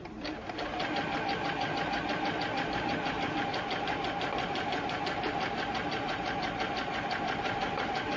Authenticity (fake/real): real